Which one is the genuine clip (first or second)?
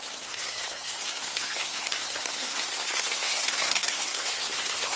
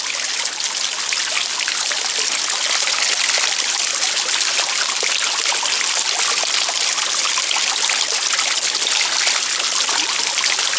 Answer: second